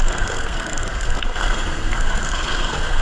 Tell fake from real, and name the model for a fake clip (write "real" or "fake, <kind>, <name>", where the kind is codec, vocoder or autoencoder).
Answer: fake, codec, SNAC